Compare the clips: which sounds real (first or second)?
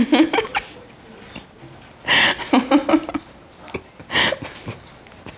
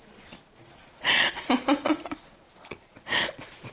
first